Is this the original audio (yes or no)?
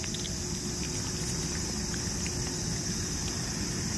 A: yes